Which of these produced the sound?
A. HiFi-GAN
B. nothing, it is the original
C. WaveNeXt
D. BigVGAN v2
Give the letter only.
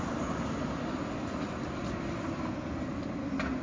B